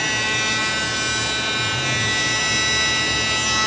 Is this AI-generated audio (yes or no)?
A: no